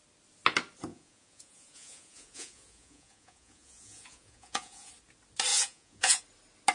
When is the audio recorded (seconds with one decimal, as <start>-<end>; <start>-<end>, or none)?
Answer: 0.0-0.9; 4.9-5.5; 6.2-6.7

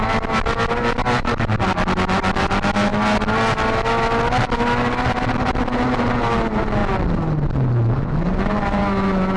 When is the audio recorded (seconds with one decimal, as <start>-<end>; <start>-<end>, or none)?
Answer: 0.0-8.3; 8.8-9.4

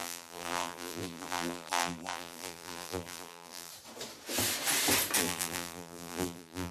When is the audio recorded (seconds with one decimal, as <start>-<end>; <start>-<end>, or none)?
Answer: 3.7-5.2

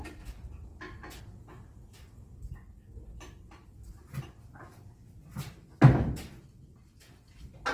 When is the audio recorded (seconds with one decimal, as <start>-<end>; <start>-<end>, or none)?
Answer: 0.0-7.7

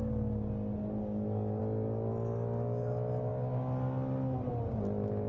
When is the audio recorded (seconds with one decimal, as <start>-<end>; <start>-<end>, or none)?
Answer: 0.0-1.0; 1.6-5.3

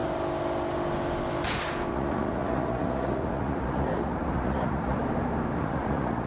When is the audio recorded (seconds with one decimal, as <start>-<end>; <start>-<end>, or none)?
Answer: 0.0-1.9; 5.0-5.6